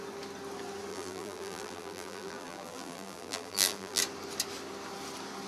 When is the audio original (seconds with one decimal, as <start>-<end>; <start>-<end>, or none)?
0.0-0.9; 4.0-5.5